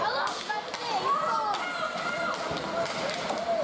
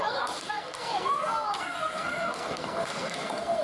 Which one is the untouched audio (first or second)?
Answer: first